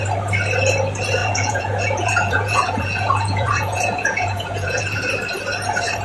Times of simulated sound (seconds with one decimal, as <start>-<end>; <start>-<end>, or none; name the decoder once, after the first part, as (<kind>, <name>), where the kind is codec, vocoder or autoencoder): 1.2-4.8 (vocoder, Vocos)